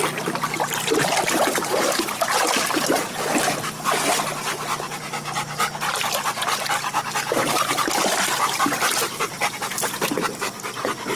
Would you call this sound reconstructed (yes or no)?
no